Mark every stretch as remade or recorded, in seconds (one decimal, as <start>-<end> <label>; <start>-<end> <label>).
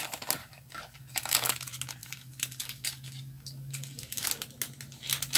0.0-0.4 recorded; 0.4-1.5 remade; 1.5-2.0 recorded; 2.0-4.3 remade; 4.3-5.4 recorded